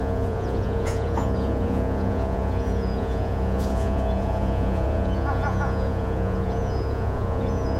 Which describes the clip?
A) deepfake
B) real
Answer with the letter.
A